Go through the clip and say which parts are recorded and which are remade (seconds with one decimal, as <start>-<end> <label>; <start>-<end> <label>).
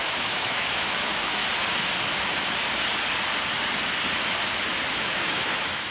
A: 0.0-1.4 remade; 1.4-4.9 recorded; 4.9-5.9 remade